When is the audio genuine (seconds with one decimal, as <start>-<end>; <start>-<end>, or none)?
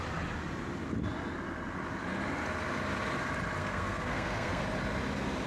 0.0-3.6; 4.6-5.5